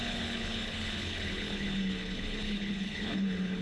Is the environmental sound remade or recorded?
remade